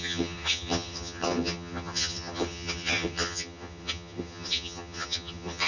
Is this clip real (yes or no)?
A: no